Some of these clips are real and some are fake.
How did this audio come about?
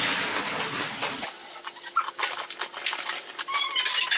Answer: real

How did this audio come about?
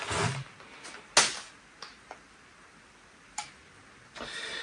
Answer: real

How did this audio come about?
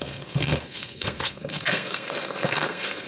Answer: fake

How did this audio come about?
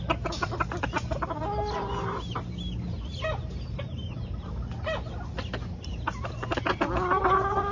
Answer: real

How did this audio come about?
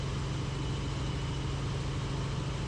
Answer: real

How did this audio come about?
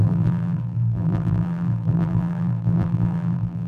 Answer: fake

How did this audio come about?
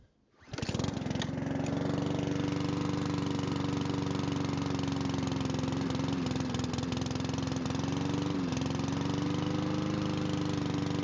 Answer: real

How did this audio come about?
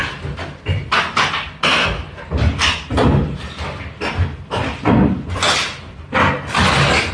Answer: real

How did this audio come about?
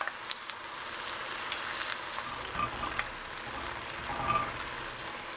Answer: real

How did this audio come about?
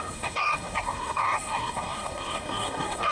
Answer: fake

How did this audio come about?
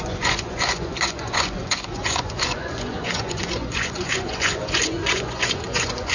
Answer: fake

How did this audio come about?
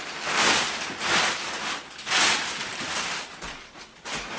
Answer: real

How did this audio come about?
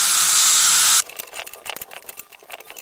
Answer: real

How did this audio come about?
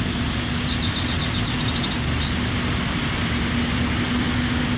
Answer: real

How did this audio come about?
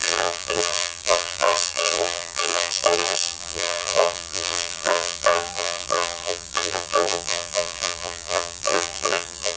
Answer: fake